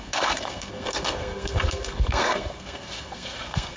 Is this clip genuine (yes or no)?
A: no